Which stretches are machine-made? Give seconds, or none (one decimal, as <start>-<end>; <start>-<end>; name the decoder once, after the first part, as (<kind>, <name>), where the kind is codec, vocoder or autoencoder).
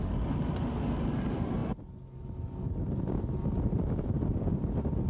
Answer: none